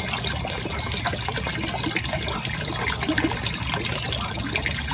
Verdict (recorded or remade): recorded